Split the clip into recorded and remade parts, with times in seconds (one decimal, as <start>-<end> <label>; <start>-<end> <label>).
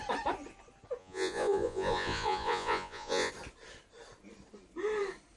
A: 0.0-1.0 recorded; 1.0-3.3 remade; 3.3-5.4 recorded